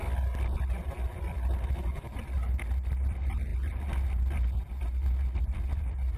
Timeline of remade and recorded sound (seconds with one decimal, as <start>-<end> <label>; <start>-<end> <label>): 0.0-6.2 recorded